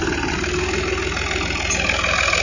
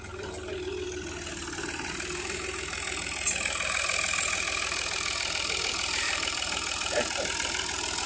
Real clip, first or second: first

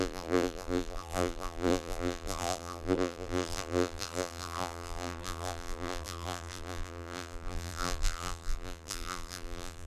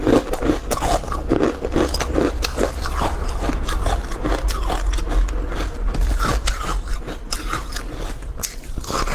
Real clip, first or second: second